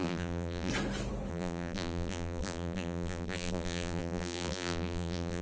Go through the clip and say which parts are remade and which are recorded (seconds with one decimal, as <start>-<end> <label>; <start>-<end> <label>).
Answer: 0.0-0.7 remade; 0.7-1.3 recorded; 1.3-5.4 remade